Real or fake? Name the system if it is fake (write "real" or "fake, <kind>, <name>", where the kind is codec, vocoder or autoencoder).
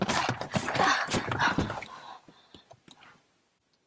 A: real